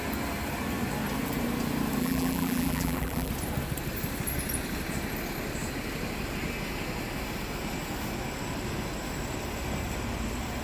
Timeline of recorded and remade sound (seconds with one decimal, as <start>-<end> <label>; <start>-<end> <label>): 0.0-2.0 recorded; 2.0-3.3 remade; 3.3-10.6 recorded